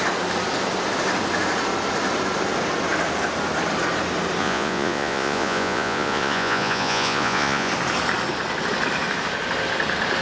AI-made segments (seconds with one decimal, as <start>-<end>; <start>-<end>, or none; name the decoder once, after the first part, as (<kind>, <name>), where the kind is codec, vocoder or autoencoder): 4.4-7.7 (vocoder, Vocos)